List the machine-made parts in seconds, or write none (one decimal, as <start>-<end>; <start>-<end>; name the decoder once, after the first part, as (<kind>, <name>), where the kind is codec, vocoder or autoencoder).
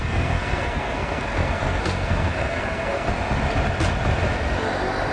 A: 0.0-3.1 (codec, SNAC)